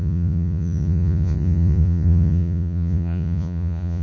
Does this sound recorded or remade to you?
remade